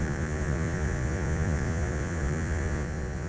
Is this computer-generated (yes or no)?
yes